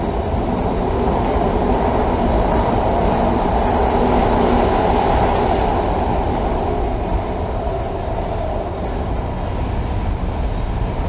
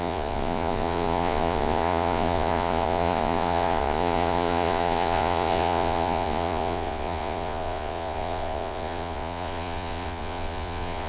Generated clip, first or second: second